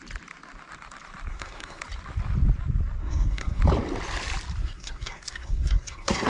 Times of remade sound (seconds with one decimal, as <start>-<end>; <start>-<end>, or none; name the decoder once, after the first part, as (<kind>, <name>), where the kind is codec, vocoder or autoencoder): 1.3-1.8 (codec, SNAC); 3.0-3.6; 4.6-6.3